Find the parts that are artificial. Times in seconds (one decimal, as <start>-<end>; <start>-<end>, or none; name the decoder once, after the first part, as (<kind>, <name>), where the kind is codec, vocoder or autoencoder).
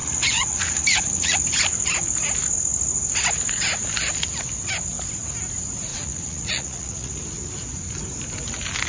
0.0-1.4 (vocoder, Vocos); 5.9-7.2